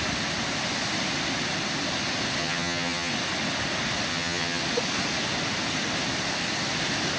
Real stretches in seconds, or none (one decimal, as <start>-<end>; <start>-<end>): 0.0-2.4; 3.1-4.1; 4.6-7.2